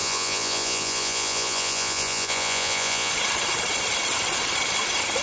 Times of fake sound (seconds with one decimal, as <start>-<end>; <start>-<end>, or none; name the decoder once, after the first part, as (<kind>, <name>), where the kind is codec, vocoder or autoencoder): 0.0-3.1 (vocoder, Vocos)